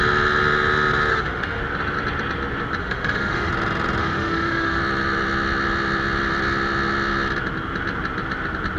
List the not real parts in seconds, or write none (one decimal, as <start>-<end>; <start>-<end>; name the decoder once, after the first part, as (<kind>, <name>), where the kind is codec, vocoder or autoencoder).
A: 1.1-1.6 (autoencoder, DAC-VAE); 2.8-3.5; 4.0-4.8